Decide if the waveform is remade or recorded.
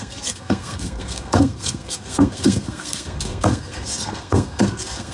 remade